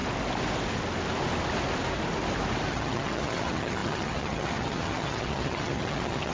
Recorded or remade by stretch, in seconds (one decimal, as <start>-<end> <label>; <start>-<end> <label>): 0.0-2.7 recorded; 2.7-6.3 remade